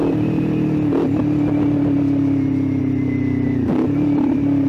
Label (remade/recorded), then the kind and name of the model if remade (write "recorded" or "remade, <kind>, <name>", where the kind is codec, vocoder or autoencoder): recorded